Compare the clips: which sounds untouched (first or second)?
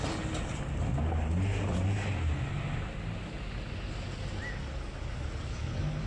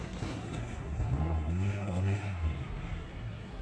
first